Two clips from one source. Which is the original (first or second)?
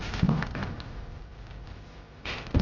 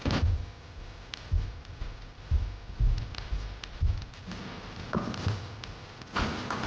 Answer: second